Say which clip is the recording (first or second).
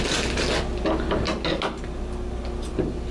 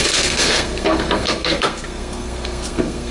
first